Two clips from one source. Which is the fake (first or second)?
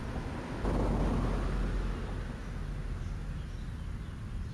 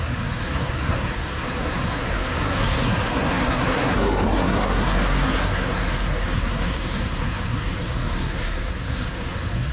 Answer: second